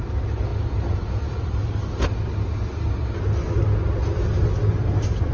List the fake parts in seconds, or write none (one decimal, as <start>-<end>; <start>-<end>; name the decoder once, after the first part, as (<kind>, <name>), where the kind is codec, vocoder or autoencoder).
none